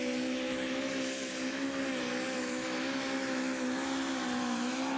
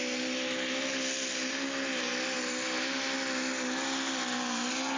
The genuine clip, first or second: second